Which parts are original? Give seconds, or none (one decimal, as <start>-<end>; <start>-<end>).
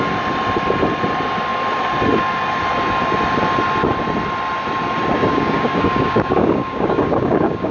0.0-5.3